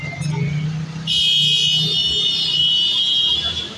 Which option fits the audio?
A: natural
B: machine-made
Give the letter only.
A